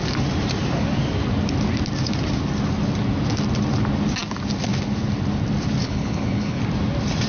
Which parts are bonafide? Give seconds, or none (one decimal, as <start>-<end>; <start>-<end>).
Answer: 0.0-5.8; 6.6-7.3